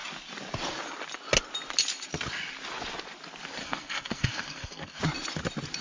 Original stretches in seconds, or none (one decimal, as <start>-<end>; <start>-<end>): 0.0-3.6; 5.0-5.8